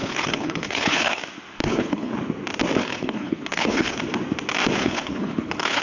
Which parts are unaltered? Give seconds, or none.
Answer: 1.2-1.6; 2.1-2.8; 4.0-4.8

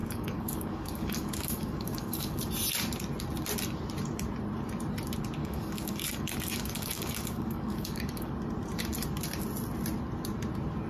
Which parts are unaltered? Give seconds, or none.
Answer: 2.4-5.4; 8.3-10.9

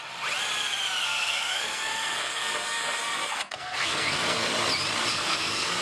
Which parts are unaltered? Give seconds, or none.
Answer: 0.0-1.0; 4.5-5.1

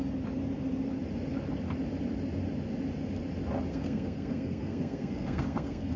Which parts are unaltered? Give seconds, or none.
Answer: 0.0-3.7

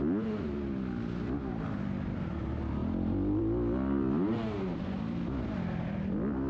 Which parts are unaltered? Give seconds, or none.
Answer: 0.0-6.5

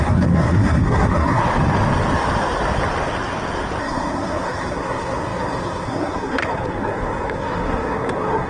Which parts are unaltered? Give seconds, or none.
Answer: 1.4-3.8